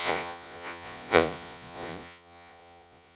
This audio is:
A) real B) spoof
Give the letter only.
B